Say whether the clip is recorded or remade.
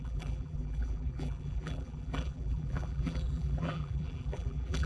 remade